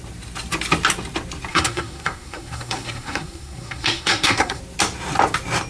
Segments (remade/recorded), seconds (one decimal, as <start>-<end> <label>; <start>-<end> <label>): 0.0-1.5 recorded; 1.5-4.6 remade; 4.6-5.7 recorded